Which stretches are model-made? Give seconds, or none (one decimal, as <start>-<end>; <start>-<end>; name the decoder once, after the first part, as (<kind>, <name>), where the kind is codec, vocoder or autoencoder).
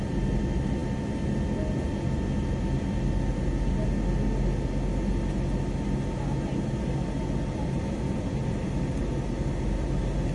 none